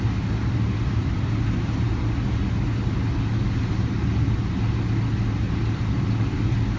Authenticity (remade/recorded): recorded